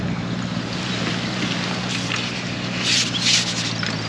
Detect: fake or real real